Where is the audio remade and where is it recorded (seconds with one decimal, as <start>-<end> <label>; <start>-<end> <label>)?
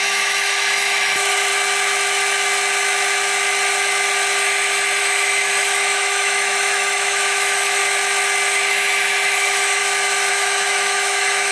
0.0-1.5 remade; 1.5-5.0 recorded; 5.0-7.8 remade; 7.8-8.7 recorded; 8.7-9.8 remade; 9.8-10.3 recorded; 10.3-11.5 remade